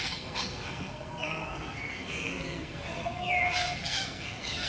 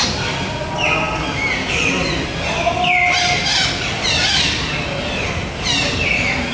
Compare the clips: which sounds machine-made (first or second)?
first